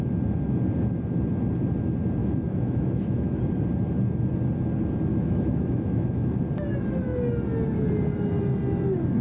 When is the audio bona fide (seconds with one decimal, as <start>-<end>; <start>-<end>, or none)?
0.0-2.2; 3.4-5.1; 6.4-9.2